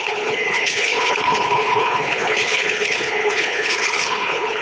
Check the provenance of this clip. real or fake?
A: fake